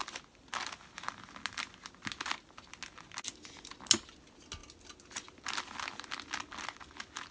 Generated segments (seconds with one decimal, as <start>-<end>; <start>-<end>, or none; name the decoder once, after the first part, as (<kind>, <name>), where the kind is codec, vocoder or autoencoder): none